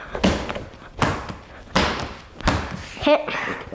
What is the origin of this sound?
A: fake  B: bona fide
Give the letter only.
B